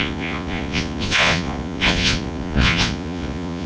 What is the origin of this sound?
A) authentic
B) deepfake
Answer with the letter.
B